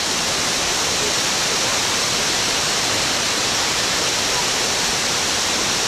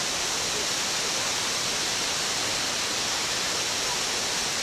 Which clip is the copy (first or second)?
first